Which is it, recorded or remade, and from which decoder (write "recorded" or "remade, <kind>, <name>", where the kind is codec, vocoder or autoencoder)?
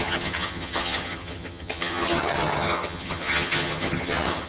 remade, vocoder, HiFi-GAN